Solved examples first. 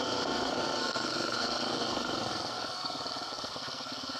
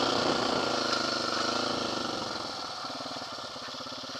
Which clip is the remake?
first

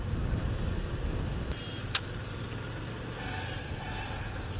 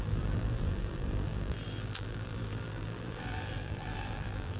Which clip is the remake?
second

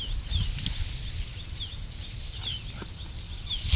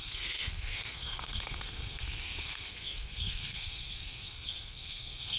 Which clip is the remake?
second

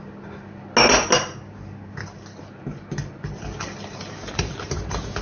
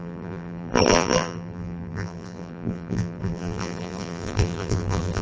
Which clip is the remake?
second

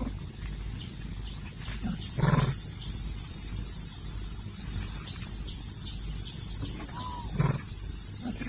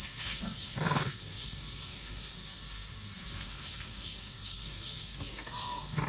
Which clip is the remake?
second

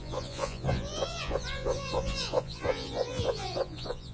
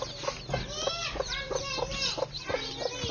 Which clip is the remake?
first